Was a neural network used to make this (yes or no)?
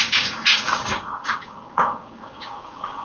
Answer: yes